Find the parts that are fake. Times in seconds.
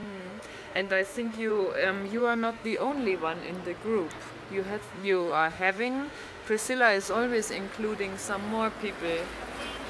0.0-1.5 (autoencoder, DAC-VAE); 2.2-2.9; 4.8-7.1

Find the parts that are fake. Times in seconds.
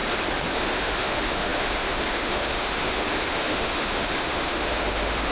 0.5-5.3 (autoencoder, DAC-VAE)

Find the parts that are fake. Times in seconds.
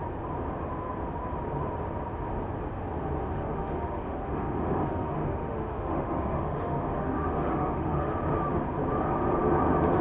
3.2-8.1 (autoencoder, DAC-VAE)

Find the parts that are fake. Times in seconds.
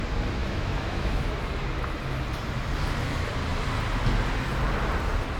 0.4-1.1 (autoencoder, DAC-VAE)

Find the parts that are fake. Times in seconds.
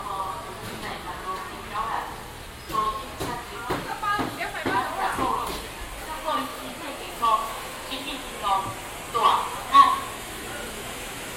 6.5-8.1 (autoencoder, DAC-VAE); 9.5-11.4